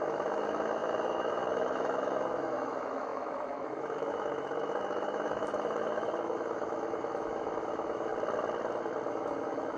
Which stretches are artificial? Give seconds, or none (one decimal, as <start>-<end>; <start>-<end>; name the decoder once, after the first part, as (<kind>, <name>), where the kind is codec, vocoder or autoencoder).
0.0-8.1 (autoencoder, DAC-VAE); 9.1-9.8